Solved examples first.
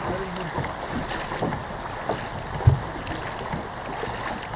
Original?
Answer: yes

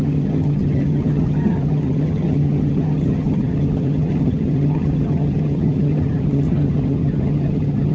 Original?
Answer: no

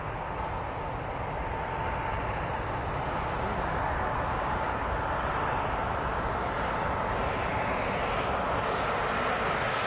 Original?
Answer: yes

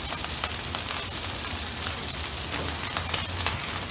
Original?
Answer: yes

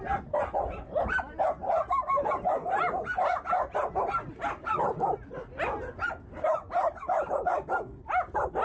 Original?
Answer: yes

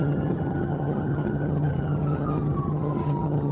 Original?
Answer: no